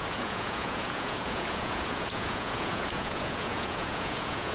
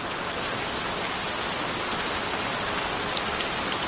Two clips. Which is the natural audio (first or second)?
second